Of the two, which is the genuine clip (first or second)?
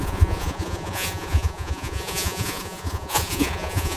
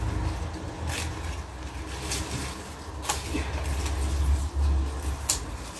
second